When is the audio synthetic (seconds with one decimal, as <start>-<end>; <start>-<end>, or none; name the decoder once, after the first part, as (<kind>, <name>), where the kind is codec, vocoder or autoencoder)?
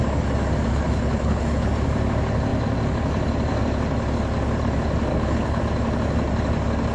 0.7-1.7 (codec, HILCodec); 5.1-5.6